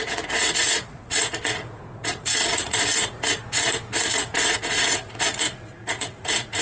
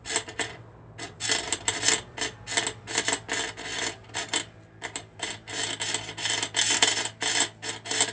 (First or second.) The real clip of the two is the second